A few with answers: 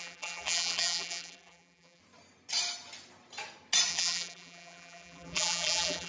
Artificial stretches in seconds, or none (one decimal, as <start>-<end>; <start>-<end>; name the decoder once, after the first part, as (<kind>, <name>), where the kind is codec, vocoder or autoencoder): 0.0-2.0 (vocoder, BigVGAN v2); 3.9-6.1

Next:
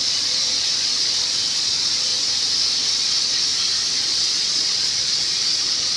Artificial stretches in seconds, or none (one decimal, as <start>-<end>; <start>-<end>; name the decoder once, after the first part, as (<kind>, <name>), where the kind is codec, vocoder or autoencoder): 0.0-2.1 (vocoder, Vocos); 2.8-3.5; 4.0-6.0

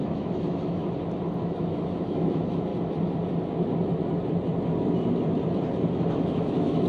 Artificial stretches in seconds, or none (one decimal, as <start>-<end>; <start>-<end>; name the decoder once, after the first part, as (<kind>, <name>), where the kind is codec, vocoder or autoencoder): 0.0-0.8 (autoencoder, DAC-VAE); 1.4-2.7; 6.2-6.9